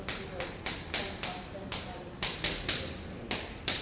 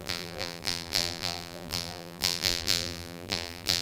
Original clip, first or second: first